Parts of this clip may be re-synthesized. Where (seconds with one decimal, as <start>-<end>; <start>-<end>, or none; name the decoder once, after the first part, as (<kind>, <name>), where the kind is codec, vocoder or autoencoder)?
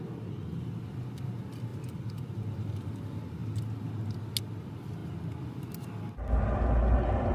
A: none